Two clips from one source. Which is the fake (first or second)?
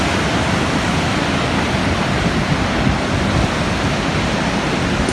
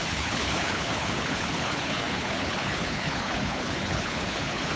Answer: second